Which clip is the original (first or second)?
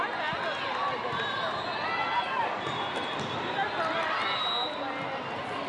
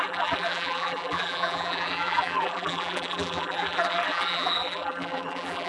first